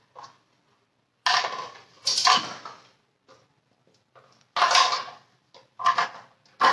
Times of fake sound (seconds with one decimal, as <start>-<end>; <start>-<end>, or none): none